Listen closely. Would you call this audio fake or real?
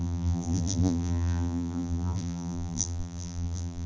fake